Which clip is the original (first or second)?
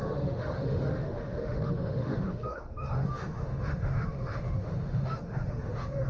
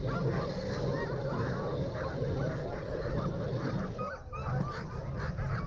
second